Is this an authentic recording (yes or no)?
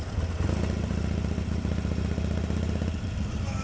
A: yes